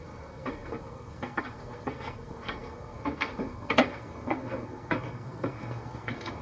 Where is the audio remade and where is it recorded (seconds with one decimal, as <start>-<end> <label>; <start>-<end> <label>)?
0.0-6.4 remade